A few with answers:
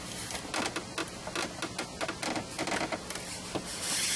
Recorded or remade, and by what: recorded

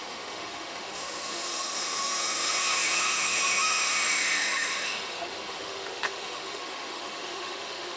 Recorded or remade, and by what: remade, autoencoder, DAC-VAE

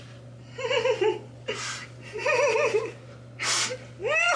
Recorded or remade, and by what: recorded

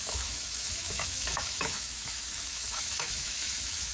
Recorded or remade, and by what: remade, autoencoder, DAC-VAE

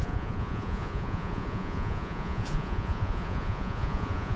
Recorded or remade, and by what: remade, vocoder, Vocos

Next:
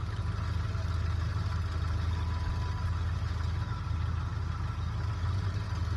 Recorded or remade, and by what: recorded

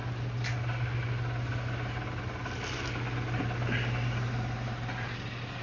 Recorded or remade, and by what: recorded